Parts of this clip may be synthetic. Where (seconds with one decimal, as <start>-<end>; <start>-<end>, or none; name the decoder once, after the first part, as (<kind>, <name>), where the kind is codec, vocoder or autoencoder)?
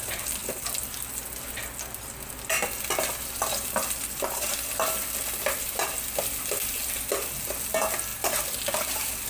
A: 0.4-1.0 (vocoder, BigVGAN v2); 8.1-9.3